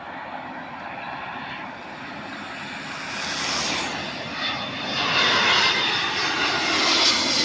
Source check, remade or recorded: recorded